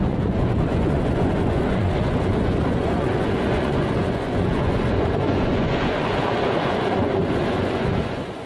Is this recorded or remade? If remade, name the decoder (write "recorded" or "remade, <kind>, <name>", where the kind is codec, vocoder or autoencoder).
remade, vocoder, Vocos